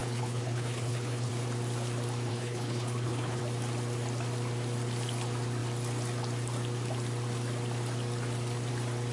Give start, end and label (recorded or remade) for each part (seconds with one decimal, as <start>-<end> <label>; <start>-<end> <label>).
0.0-1.3 remade; 1.3-2.3 recorded; 2.3-3.4 remade; 3.4-9.1 recorded

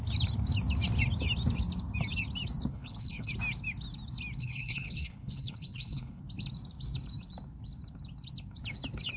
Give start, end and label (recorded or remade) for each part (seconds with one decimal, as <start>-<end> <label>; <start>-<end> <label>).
0.0-2.7 recorded; 2.7-3.3 remade; 3.3-4.4 recorded; 4.4-6.2 remade; 6.2-9.2 recorded